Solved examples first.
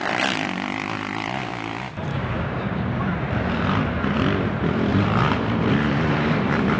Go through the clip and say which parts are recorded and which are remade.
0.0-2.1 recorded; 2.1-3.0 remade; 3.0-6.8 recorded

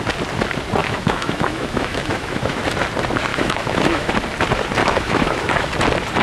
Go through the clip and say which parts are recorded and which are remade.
0.0-0.8 recorded; 0.8-2.6 remade; 2.6-3.3 recorded; 3.3-4.1 remade; 4.1-4.8 recorded; 4.8-5.7 remade; 5.7-6.2 recorded

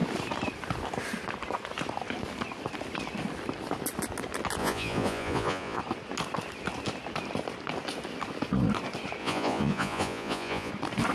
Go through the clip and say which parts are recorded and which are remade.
0.0-4.6 recorded; 4.6-5.8 remade; 5.8-9.2 recorded; 9.2-10.7 remade; 10.7-11.1 recorded

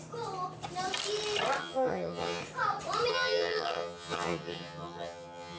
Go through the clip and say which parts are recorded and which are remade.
0.0-1.6 recorded; 1.6-2.4 remade; 2.4-3.1 recorded; 3.1-5.6 remade

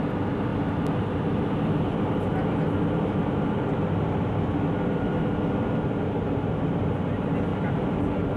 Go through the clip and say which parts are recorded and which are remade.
0.0-8.4 recorded

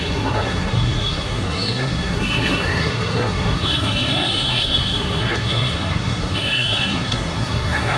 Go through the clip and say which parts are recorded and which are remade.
0.0-8.0 remade

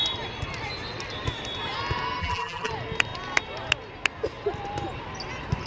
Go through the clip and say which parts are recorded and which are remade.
0.0-2.2 recorded; 2.2-2.7 remade; 2.7-5.7 recorded

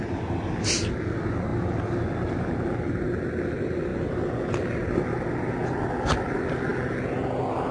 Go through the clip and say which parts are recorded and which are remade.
0.0-7.7 recorded